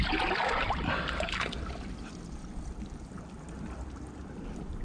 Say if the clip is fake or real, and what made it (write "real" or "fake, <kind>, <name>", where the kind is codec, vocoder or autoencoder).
real